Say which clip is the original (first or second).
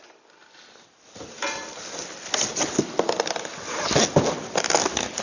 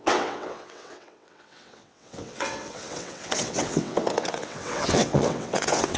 first